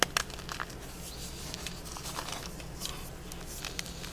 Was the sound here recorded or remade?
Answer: recorded